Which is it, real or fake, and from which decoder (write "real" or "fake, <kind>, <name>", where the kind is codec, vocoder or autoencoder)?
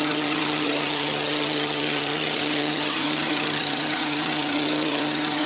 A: fake, vocoder, HiFi-GAN